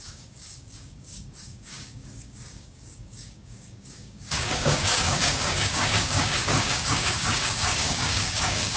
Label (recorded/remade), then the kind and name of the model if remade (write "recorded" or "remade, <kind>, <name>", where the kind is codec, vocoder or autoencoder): remade, codec, DAC